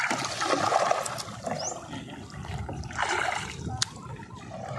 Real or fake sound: real